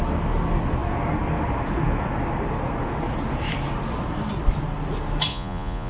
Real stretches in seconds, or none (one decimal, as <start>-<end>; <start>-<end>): 0.0-5.3